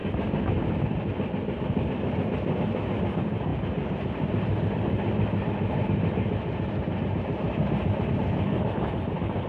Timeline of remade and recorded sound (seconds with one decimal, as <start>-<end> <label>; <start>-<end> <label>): 0.0-9.5 recorded